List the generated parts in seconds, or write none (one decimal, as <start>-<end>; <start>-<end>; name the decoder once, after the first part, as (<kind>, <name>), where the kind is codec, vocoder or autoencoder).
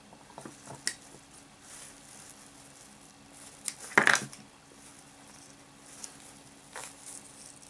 none